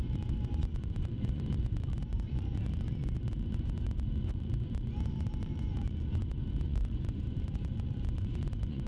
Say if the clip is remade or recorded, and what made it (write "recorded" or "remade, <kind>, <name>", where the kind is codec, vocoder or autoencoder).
remade, vocoder, Vocos